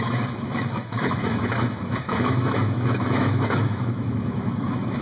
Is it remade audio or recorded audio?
remade